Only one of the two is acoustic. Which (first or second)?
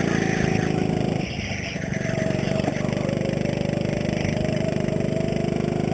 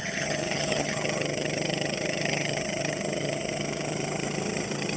first